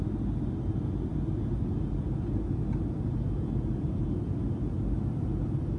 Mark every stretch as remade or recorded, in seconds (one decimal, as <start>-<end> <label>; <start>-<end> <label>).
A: 0.0-5.8 recorded